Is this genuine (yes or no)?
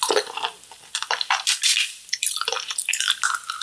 yes